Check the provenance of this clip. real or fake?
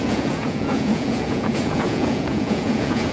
fake